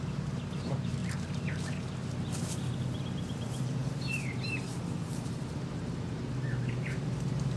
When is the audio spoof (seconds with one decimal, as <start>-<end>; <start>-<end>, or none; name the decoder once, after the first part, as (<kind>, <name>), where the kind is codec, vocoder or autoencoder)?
0.0-1.0 (vocoder, BigVGAN v2); 2.5-7.6